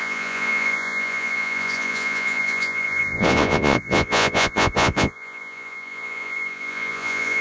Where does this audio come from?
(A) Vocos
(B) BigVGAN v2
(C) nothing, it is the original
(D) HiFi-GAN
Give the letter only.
A